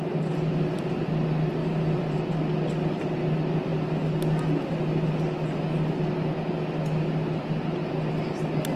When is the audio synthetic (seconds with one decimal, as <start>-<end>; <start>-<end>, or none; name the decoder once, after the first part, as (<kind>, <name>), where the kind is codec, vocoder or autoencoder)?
1.6-2.2 (vocoder, BigVGAN v2)

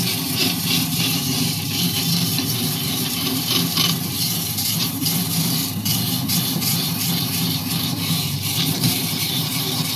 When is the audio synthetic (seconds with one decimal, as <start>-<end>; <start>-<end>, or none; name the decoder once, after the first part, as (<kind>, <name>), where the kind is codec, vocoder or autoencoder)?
0.0-10.0 (vocoder, BigVGAN v2)